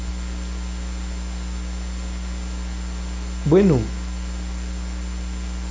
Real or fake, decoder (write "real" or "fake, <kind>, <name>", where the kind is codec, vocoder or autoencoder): real